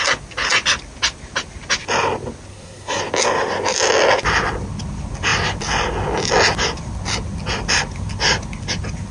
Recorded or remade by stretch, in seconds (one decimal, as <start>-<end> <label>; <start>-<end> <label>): 0.0-2.5 recorded; 2.5-3.0 remade; 3.0-9.1 recorded